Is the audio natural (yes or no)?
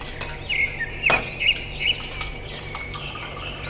no